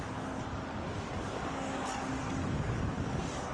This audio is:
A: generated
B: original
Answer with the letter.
A